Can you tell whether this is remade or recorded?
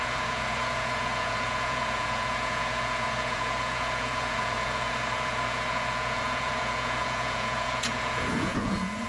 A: remade